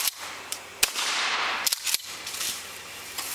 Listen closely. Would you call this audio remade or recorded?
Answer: remade